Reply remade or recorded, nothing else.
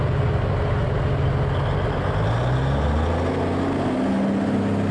recorded